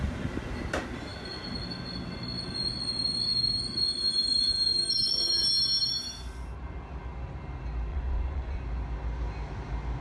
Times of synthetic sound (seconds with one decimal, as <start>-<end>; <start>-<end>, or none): 7.9-8.6